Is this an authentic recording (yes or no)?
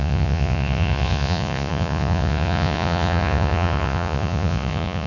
no